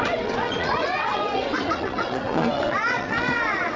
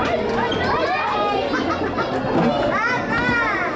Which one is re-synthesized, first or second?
first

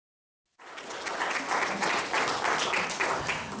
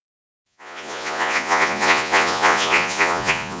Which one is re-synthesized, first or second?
second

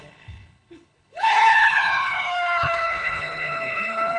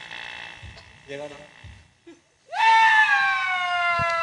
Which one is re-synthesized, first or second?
first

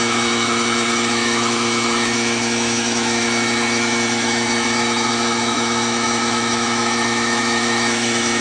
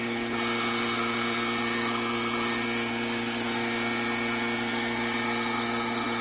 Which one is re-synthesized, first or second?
first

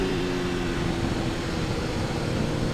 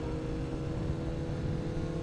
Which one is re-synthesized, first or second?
first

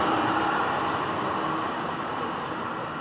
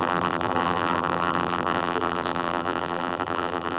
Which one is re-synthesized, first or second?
second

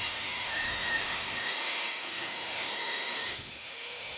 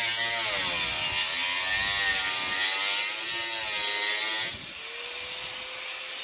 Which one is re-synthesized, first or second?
first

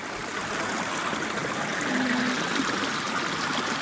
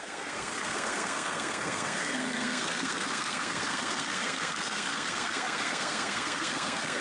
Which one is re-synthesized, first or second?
second